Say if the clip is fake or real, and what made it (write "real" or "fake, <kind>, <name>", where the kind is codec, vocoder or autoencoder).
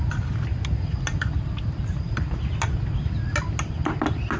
real